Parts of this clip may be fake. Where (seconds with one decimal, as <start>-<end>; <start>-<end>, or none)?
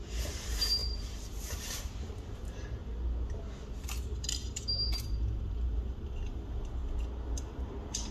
0.0-2.8; 3.8-6.8; 7.4-8.1